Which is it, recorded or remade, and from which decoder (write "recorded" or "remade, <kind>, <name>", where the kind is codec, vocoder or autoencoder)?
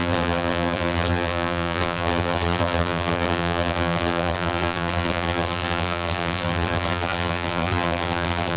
remade, vocoder, BigVGAN v2